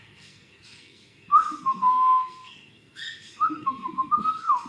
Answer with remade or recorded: remade